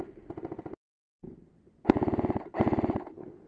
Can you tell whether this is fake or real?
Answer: real